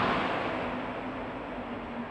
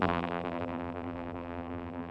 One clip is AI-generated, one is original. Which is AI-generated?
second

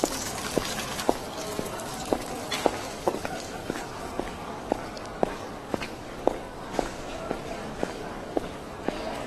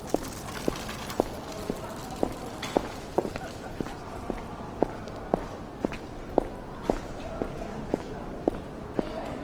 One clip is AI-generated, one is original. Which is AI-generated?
first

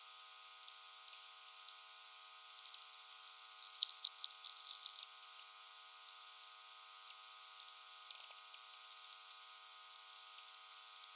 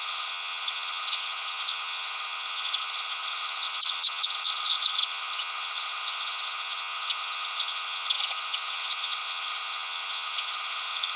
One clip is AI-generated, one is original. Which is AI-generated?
second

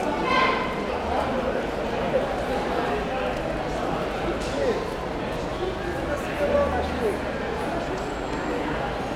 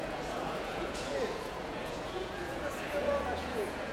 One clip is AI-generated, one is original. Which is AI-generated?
second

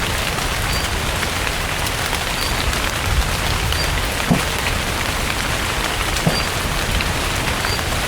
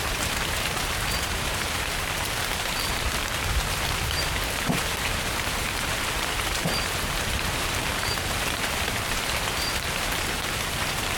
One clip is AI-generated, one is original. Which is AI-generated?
second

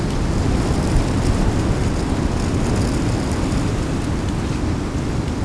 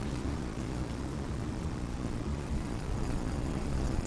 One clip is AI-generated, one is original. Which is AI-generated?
second